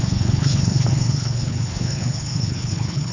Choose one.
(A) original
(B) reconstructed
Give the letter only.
B